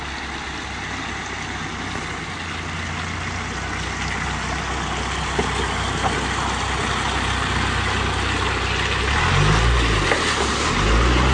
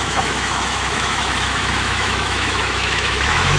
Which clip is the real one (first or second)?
first